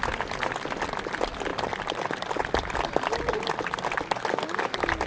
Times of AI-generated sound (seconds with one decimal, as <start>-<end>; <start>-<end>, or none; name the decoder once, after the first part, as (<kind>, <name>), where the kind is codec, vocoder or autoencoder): none